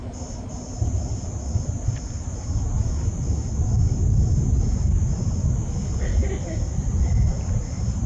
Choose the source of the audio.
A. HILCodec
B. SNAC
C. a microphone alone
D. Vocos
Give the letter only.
C